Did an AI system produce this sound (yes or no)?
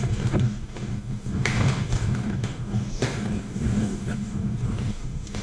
yes